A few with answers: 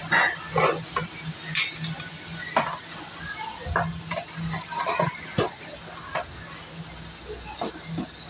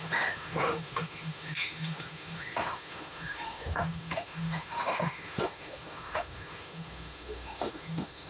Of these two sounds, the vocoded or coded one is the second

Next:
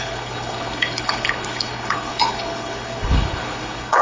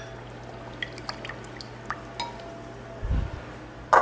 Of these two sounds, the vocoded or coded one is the first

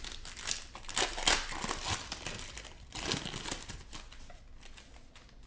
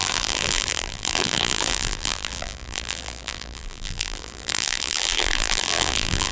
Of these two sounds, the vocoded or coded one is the second